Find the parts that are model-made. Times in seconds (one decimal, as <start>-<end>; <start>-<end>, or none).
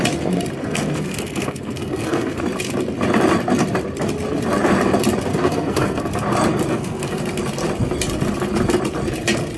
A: 0.6-2.4; 5.3-6.0; 6.7-7.2